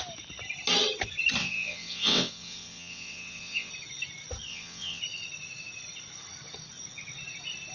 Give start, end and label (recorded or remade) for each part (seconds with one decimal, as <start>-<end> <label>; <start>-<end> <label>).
0.0-1.4 recorded; 1.4-3.7 remade; 3.7-4.5 recorded; 4.5-5.0 remade; 5.0-7.7 recorded